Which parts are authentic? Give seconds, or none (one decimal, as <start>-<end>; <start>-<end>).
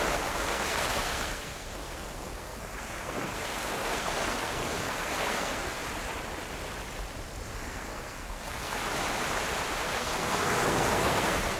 5.8-7.5; 8.8-9.8